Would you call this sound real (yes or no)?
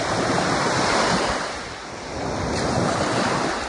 yes